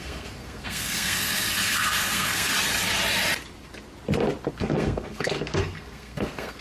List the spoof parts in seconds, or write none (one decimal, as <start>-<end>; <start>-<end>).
0.0-2.5; 4.5-6.6